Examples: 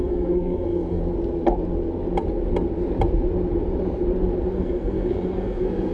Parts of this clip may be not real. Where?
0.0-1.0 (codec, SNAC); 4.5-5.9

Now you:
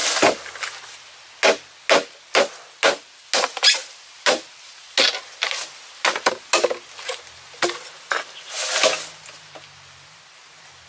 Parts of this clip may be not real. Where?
none

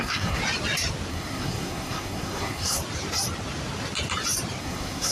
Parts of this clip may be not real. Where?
0.0-0.4 (codec, SNAC); 1.1-2.8; 4.6-5.1

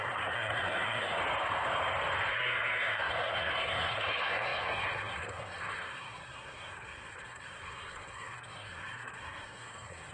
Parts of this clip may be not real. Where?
0.0-1.2 (codec, SNAC); 2.3-10.1

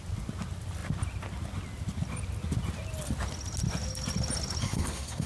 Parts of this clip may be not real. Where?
4.6-5.3 (codec, SNAC)

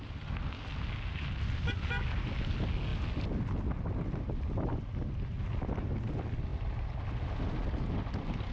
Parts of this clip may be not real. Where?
none

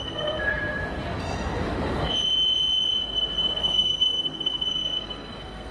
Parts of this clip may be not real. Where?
0.0-0.5 (codec, SNAC); 3.6-5.7